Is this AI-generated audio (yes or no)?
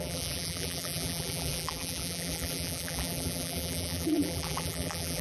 yes